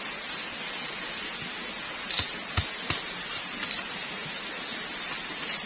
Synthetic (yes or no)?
no